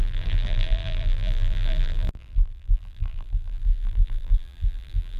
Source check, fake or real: fake